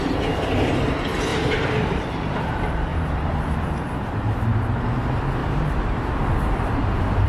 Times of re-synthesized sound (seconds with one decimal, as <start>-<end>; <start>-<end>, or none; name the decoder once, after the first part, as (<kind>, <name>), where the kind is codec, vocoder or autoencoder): 1.3-2.5 (vocoder, BigVGAN v2); 2.9-4.1; 5.4-6.1